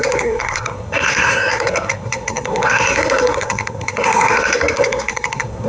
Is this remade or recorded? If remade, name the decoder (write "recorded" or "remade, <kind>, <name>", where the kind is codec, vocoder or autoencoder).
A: remade, codec, SNAC